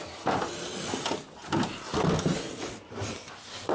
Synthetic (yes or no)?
no